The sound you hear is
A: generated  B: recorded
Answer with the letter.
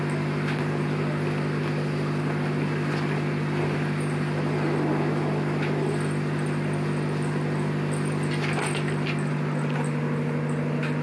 B